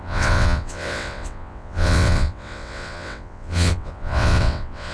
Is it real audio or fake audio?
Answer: fake